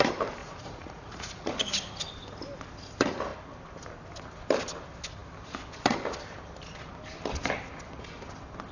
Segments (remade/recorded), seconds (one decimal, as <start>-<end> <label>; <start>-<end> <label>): 0.0-0.4 recorded; 0.4-1.5 remade; 1.5-8.7 recorded